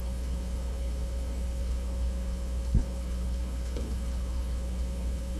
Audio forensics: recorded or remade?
remade